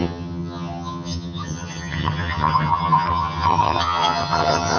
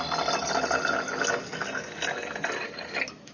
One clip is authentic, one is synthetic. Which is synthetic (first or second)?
first